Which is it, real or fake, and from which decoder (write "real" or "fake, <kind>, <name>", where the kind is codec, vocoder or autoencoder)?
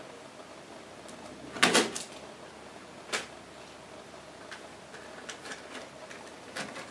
real